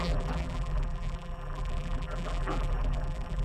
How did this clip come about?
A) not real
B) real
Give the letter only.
A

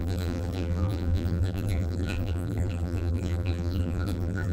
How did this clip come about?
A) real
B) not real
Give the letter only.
B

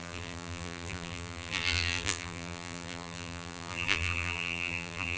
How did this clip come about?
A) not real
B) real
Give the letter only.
A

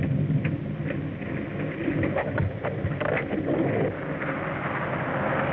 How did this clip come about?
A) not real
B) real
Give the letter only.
B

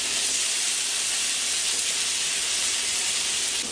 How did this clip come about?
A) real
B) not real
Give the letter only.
A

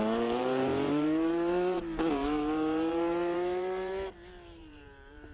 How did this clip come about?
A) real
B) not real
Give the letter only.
B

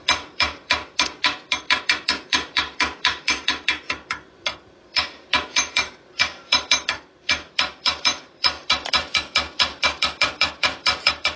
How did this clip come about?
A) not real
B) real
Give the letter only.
A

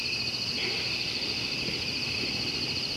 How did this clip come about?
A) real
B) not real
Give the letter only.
A